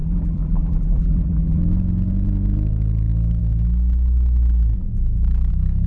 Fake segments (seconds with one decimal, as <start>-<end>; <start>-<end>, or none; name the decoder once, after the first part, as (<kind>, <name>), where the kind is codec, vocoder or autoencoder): 0.0-1.6 (vocoder, BigVGAN v2)